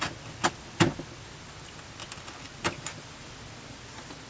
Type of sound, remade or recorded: recorded